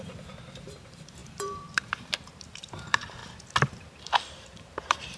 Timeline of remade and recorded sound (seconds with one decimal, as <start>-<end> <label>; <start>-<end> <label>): 0.0-3.2 remade; 3.2-4.0 recorded; 4.0-5.2 remade